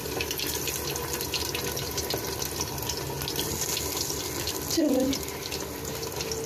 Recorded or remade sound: recorded